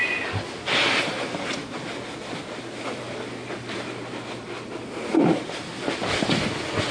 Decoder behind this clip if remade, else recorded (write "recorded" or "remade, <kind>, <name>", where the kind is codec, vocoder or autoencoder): recorded